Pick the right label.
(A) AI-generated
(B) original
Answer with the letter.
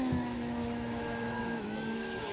A